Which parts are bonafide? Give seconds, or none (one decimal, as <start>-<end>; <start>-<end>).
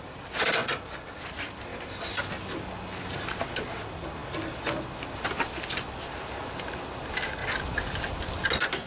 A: 0.0-8.9